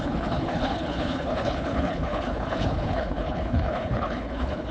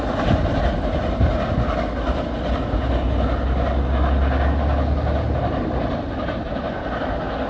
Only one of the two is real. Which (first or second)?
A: second